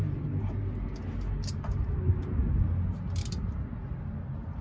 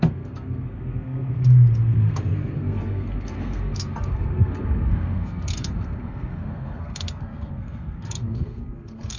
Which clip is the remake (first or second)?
second